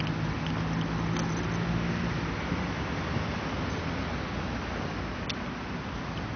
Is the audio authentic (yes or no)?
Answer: yes